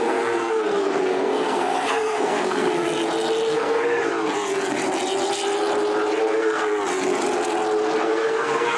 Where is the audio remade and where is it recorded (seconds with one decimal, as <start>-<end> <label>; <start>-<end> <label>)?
0.0-3.0 remade; 3.0-3.5 recorded; 3.5-4.1 remade; 4.1-6.2 recorded; 6.2-6.7 remade; 6.7-8.0 recorded; 8.0-8.8 remade